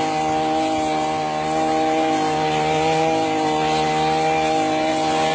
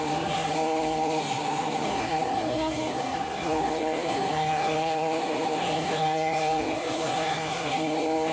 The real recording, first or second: first